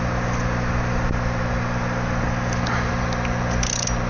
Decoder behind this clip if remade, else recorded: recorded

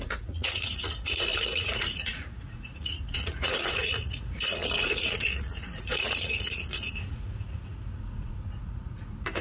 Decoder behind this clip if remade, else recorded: remade, vocoder, Vocos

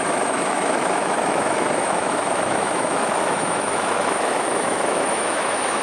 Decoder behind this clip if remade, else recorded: remade, autoencoder, DAC-VAE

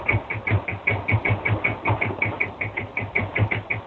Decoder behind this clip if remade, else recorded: recorded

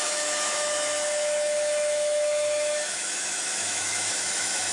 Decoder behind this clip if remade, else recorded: remade, autoencoder, DAC-VAE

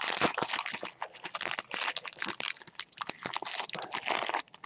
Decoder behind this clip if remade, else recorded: recorded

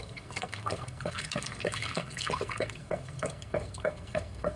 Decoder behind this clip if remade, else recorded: remade, codec, SNAC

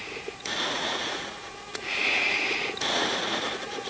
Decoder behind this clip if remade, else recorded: remade, vocoder, Vocos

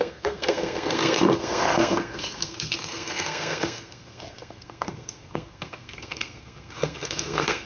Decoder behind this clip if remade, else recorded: remade, codec, SNAC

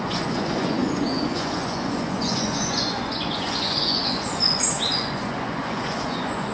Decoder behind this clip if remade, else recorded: remade, vocoder, Vocos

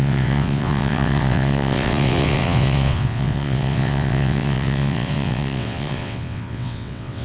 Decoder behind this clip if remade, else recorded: remade, vocoder, WaveNeXt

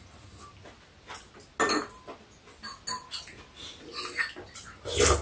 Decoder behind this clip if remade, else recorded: recorded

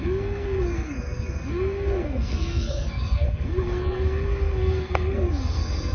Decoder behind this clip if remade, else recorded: remade, codec, SNAC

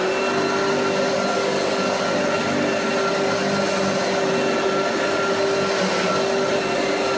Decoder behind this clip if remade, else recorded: recorded